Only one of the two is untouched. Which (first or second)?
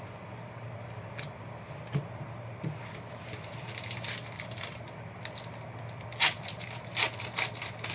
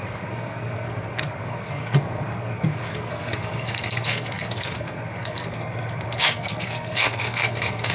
first